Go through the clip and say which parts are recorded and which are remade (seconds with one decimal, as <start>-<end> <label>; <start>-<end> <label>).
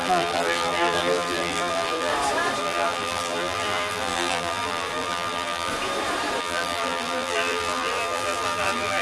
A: 0.0-2.1 remade; 2.1-2.6 recorded; 2.6-5.7 remade; 5.7-6.4 recorded; 6.4-9.0 remade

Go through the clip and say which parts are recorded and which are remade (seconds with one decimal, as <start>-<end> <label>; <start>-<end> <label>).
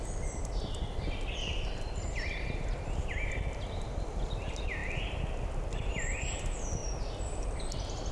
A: 0.0-6.8 recorded; 6.8-8.1 remade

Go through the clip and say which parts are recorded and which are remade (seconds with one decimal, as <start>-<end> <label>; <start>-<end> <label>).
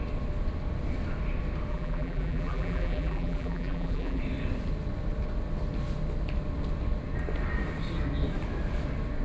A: 0.0-1.7 recorded; 1.7-4.2 remade; 4.2-9.2 recorded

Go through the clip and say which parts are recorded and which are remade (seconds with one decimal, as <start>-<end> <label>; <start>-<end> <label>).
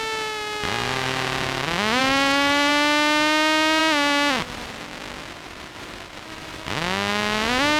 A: 0.0-2.0 recorded; 2.0-2.7 remade; 2.7-7.8 recorded